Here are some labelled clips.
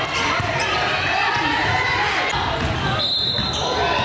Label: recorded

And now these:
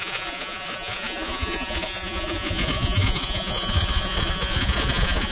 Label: remade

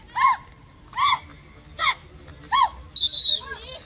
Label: recorded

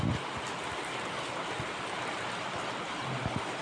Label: remade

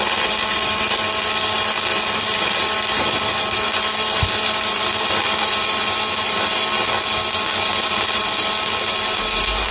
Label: recorded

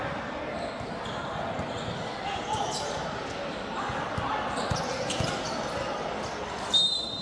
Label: recorded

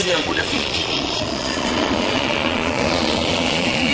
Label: remade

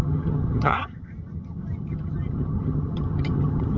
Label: remade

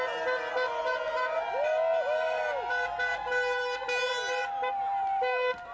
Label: recorded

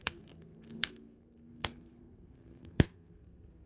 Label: remade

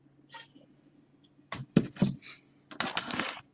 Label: recorded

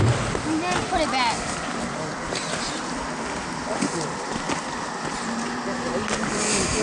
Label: recorded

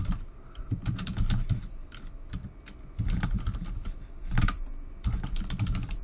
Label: remade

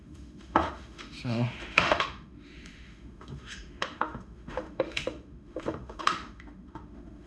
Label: remade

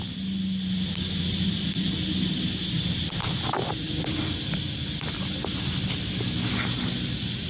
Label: recorded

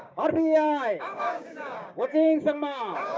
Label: remade